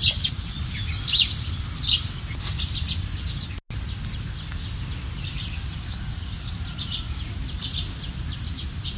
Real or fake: real